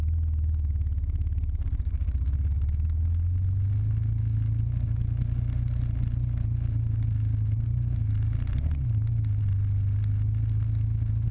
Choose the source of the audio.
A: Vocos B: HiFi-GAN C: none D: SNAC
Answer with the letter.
C